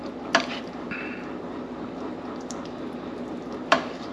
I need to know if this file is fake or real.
fake